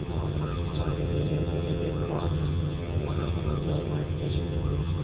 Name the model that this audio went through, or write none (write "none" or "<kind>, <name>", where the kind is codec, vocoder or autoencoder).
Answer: vocoder, HiFi-GAN